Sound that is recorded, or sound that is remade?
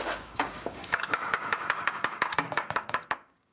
remade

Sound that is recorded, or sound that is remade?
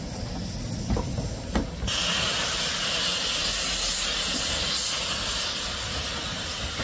recorded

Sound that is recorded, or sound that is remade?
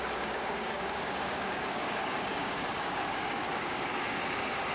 remade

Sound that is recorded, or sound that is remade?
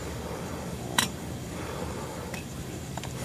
remade